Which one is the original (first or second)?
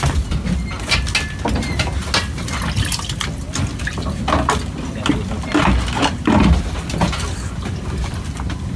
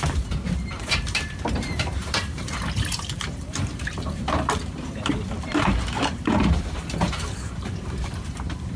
first